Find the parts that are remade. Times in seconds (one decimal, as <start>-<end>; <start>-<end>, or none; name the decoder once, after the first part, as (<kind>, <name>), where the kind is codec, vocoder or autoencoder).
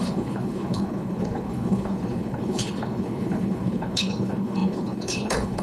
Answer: 0.0-5.6 (codec, HILCodec)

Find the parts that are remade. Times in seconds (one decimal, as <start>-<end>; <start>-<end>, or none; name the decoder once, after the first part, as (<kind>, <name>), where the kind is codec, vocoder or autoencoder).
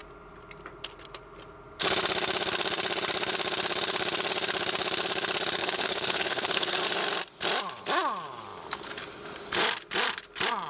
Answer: 5.6-6.8 (codec, HILCodec)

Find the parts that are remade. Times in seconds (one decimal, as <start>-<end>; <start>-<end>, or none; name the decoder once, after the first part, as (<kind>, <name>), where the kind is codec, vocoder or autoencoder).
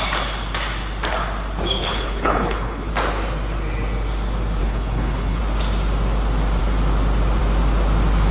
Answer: 1.8-2.9 (codec, HILCodec); 4.6-5.4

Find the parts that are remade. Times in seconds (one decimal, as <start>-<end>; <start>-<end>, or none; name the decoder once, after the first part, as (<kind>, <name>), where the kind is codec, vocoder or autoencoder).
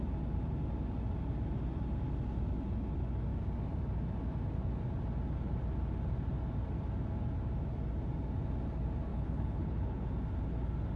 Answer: 9.1-10.1 (codec, HILCodec)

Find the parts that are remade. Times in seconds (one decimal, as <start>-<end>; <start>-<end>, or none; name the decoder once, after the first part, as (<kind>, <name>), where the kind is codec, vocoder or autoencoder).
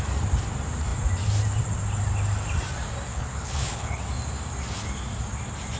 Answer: 3.1-4.0 (codec, HILCodec)